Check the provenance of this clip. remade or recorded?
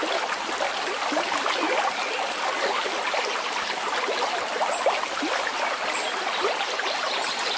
recorded